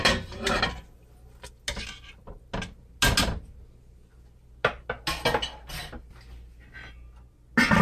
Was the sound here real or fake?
real